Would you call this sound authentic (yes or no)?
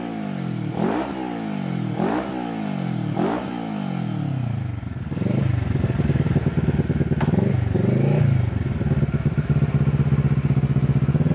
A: yes